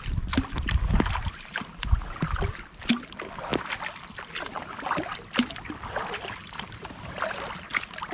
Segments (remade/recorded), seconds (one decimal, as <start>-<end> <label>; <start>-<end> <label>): 0.0-8.1 recorded